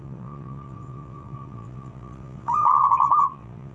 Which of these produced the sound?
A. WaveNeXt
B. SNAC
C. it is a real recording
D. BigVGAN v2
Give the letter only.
A